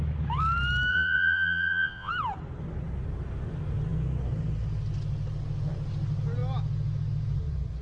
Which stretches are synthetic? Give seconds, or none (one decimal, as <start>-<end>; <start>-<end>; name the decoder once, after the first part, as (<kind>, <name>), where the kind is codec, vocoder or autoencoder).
0.9-2.1 (vocoder, Vocos)